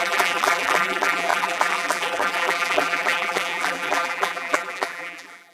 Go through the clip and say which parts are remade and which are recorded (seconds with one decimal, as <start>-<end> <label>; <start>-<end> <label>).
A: 0.0-5.5 remade